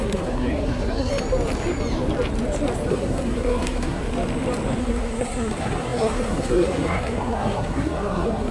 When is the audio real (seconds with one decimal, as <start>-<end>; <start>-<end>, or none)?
1.1-2.9; 4.0-4.8